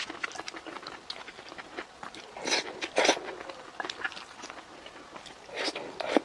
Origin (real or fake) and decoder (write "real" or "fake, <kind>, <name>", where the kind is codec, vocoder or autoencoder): real